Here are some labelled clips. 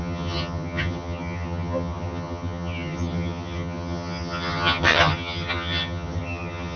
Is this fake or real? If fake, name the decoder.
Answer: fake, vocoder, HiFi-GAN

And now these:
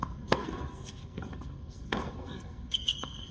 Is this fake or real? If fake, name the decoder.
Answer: fake, codec, SNAC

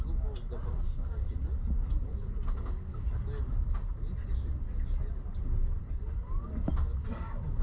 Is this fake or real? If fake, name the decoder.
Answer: real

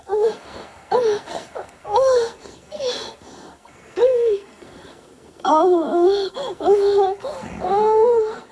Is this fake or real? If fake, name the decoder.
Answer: fake, codec, SNAC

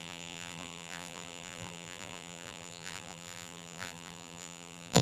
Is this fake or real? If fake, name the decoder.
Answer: fake, vocoder, BigVGAN v2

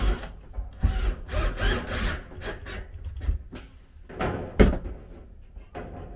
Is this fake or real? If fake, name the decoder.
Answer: real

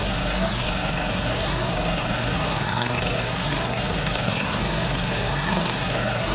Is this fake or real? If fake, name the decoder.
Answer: fake, codec, SNAC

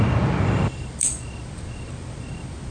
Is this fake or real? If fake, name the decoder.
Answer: real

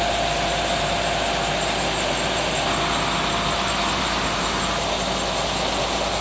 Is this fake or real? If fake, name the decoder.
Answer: real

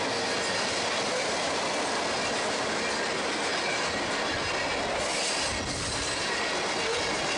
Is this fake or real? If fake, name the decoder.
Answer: real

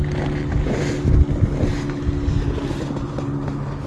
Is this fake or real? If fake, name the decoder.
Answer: real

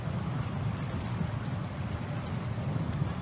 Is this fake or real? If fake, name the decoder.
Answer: real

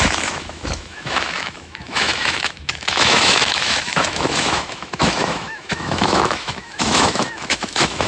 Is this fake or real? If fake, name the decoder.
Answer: fake, autoencoder, DAC-VAE